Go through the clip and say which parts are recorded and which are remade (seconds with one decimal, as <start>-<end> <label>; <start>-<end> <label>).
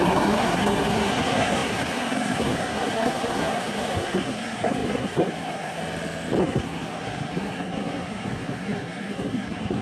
0.0-5.8 remade; 5.8-6.4 recorded; 6.4-9.8 remade